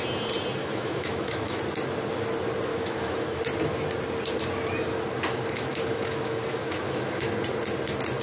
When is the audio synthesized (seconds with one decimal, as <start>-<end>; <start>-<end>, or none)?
0.6-1.6; 2.7-3.4; 5.3-7.3